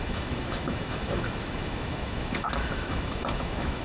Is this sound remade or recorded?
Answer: remade